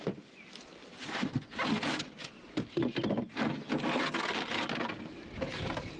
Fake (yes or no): no